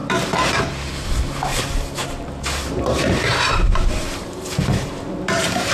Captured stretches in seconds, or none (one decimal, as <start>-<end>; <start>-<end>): 0.9-2.0